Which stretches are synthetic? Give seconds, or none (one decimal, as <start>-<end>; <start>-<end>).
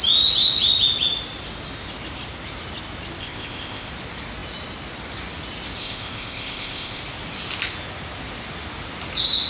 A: 3.2-3.9; 5.8-7.0